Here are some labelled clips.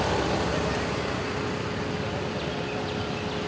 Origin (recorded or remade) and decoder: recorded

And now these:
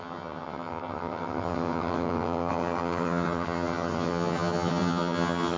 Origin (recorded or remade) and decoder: remade, vocoder, HiFi-GAN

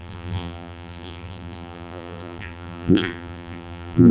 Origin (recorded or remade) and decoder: remade, vocoder, BigVGAN v2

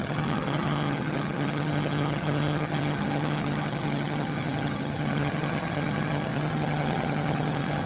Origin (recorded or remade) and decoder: remade, vocoder, HiFi-GAN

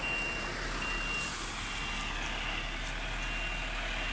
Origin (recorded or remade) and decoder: recorded